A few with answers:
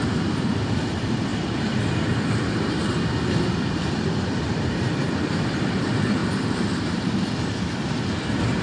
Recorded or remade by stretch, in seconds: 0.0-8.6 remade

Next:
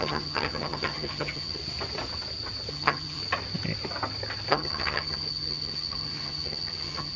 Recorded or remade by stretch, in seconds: 0.0-1.6 remade; 1.6-2.7 recorded; 2.7-3.2 remade; 3.2-4.5 recorded; 4.5-7.2 remade

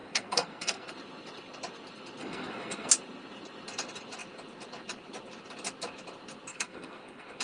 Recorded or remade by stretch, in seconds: 0.0-0.9 remade; 0.9-2.2 recorded; 2.2-2.9 remade; 2.9-6.5 recorded; 6.5-7.4 remade